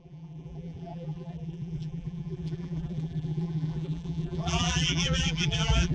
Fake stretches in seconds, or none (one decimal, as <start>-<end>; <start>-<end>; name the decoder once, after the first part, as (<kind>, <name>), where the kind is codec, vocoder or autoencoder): 0.0-5.9 (vocoder, BigVGAN v2)